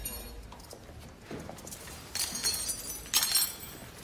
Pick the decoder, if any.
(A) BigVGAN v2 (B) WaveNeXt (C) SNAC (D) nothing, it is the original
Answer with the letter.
D